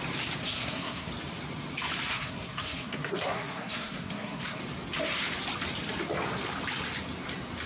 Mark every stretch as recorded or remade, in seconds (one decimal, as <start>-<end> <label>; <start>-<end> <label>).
0.0-0.4 recorded; 0.4-1.1 remade; 1.1-2.1 recorded; 2.1-4.6 remade; 4.6-7.7 recorded